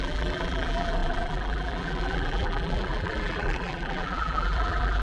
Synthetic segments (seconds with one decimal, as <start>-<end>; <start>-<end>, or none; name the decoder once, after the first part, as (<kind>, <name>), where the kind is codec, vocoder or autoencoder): 0.0-5.0 (vocoder, BigVGAN v2)

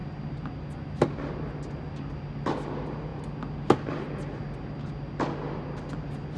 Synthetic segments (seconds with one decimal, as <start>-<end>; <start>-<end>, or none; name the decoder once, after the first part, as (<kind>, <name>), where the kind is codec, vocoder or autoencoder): none